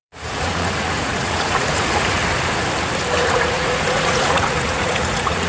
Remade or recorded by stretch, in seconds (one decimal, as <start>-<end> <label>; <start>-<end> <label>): 0.0-2.2 remade; 2.2-3.2 recorded; 3.2-5.5 remade